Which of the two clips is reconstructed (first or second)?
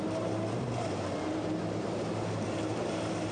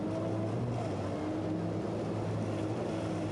first